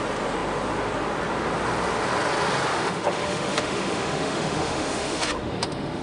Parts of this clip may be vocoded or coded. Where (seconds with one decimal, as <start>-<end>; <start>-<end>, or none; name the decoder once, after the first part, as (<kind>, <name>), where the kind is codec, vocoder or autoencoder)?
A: 2.7-6.0 (autoencoder, DAC-VAE)